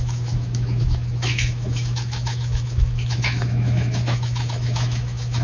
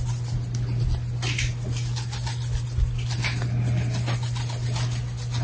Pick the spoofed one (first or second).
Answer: first